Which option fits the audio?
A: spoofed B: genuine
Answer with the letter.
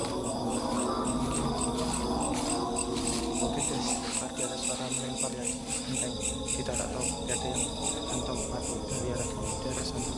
B